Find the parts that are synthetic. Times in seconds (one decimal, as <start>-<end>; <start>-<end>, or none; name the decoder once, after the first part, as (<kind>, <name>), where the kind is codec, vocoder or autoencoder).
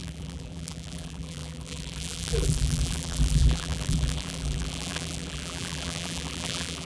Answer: 0.0-6.8 (vocoder, BigVGAN v2)